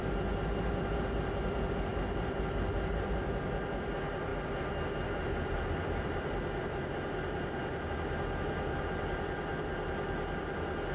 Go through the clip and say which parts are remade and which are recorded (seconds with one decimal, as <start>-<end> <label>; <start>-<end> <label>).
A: 0.0-1.9 recorded; 1.9-3.5 remade; 3.5-4.3 recorded; 4.3-7.9 remade; 7.9-10.9 recorded

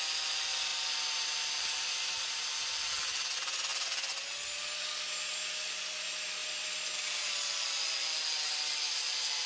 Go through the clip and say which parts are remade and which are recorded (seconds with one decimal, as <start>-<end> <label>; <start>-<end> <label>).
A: 0.0-6.4 recorded; 6.4-7.3 remade; 7.3-9.5 recorded